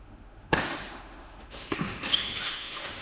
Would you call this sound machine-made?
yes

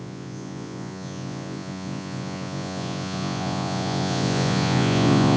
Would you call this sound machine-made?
yes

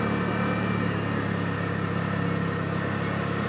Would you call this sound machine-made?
no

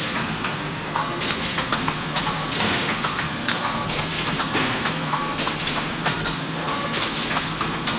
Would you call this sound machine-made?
yes